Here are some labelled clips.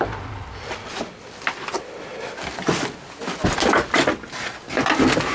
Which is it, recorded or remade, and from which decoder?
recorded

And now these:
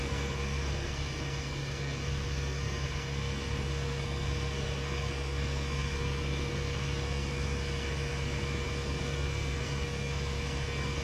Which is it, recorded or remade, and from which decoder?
remade, codec, SNAC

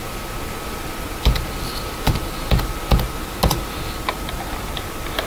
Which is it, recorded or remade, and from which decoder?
recorded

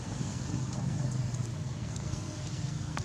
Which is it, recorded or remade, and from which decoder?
remade, codec, SNAC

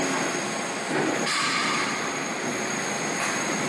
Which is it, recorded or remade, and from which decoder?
recorded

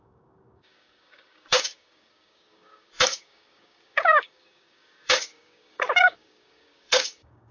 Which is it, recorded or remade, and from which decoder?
remade, codec, DAC